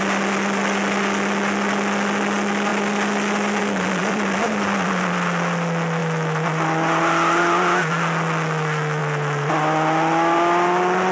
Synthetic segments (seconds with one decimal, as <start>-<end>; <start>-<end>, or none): none